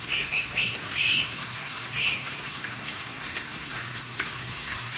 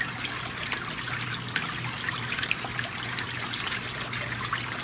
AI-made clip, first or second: first